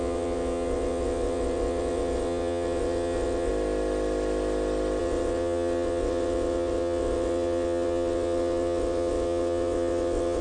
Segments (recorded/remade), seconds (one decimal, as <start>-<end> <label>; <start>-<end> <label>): 0.0-3.5 remade; 3.5-5.0 recorded; 5.0-10.4 remade

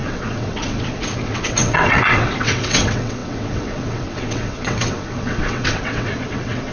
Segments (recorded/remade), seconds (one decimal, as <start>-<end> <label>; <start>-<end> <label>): 0.0-6.7 remade

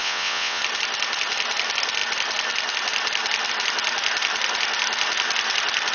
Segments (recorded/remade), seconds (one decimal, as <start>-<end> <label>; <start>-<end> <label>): 0.0-0.6 remade; 0.6-5.9 recorded